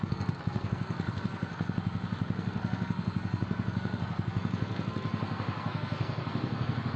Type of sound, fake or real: fake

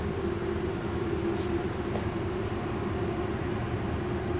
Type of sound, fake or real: real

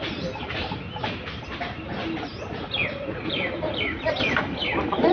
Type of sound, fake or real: fake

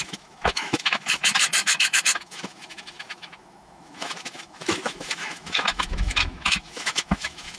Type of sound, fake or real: fake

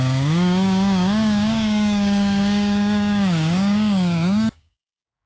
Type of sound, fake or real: fake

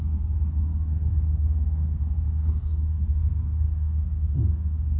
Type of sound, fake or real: fake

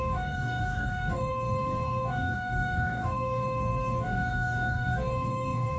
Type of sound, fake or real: fake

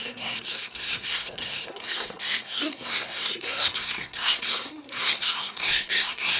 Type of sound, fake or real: fake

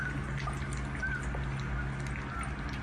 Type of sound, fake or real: real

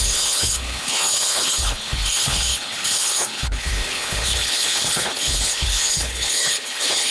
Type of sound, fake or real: fake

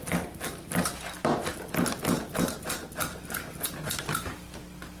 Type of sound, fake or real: real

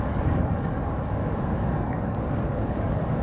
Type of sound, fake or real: fake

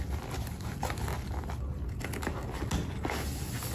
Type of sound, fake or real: real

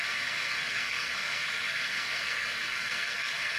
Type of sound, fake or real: fake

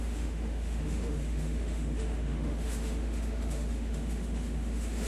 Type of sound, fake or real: fake